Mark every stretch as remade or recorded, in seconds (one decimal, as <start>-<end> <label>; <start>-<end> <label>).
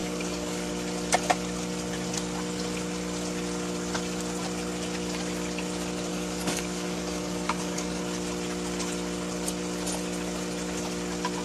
0.0-0.7 remade; 0.7-6.1 recorded; 6.1-8.0 remade; 8.0-11.4 recorded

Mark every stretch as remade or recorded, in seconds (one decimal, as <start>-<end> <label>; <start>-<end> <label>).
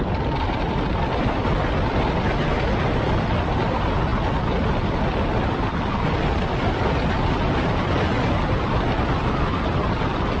0.0-10.4 recorded